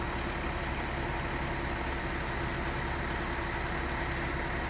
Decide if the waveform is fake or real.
real